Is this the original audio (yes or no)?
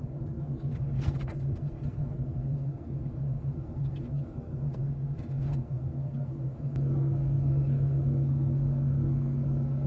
no